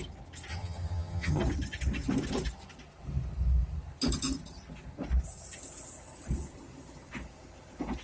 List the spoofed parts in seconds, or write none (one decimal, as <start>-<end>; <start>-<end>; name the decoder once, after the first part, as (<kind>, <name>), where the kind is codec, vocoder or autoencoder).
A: 0.5-1.4 (vocoder, HiFi-GAN)